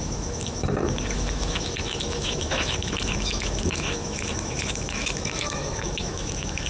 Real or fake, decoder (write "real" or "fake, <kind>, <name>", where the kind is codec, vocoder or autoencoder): fake, autoencoder, DAC-VAE